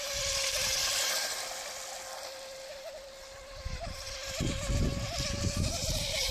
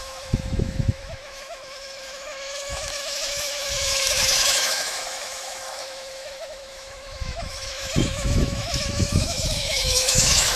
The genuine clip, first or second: first